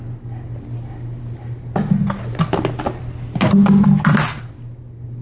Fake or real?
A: real